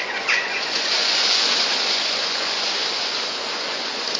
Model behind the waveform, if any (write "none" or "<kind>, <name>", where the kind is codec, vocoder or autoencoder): vocoder, Vocos